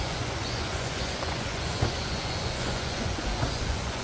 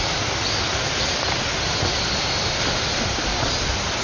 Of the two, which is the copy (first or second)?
first